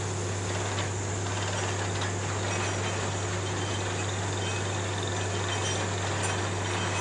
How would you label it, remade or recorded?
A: recorded